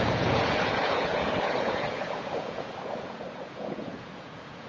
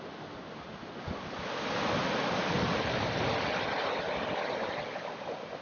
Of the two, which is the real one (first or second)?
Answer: second